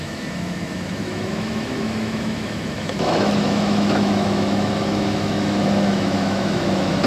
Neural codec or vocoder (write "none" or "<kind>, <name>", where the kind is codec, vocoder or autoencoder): autoencoder, DAC-VAE